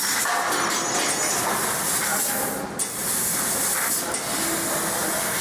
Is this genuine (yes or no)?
yes